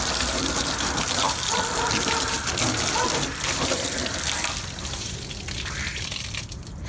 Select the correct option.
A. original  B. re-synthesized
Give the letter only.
B